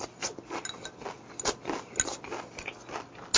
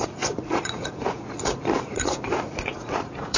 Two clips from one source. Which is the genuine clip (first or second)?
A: first